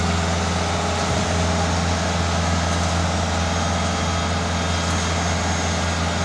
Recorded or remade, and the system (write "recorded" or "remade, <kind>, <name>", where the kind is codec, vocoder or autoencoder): recorded